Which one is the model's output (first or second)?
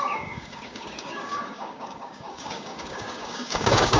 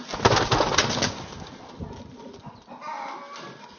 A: first